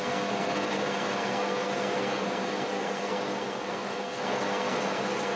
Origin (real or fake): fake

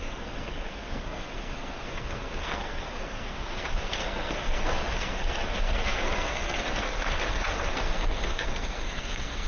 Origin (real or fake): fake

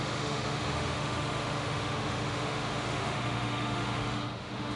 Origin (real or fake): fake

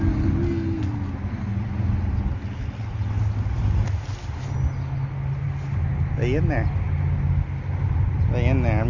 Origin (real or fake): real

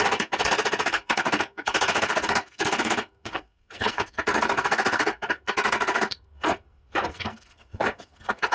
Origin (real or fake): fake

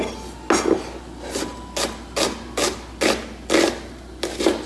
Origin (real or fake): real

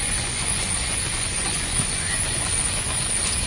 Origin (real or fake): fake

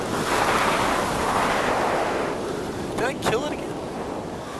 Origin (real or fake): real